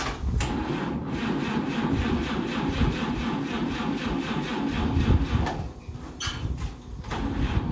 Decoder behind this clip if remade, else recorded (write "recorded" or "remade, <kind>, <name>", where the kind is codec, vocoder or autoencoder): recorded